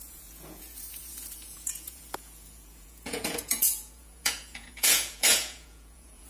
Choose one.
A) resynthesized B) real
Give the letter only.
A